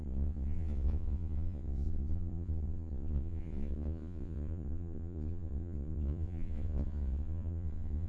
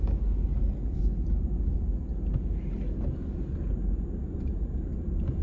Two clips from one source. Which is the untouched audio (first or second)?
second